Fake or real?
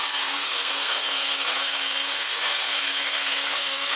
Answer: fake